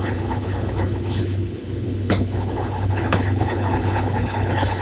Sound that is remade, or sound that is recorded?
remade